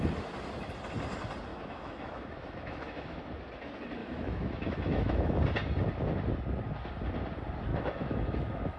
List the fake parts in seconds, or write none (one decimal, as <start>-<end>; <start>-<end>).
1.5-3.2; 4.0-5.4; 7.7-8.8